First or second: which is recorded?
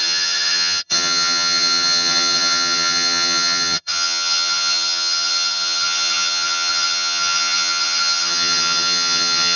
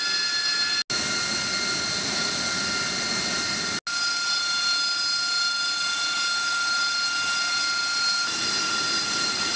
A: second